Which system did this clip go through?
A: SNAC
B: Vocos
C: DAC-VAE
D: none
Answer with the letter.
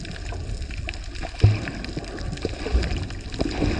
D